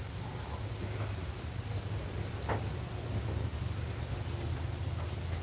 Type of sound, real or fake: real